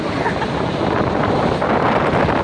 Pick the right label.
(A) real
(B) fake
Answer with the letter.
A